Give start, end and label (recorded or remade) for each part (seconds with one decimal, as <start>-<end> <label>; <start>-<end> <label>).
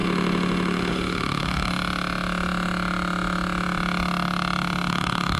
0.0-1.7 remade; 1.7-4.9 recorded; 4.9-5.4 remade